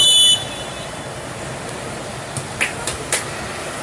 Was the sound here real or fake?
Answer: real